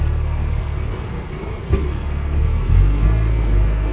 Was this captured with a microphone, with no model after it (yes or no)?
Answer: no